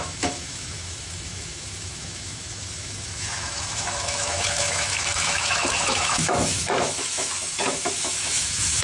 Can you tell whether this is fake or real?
fake